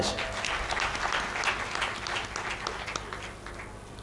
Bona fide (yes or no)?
yes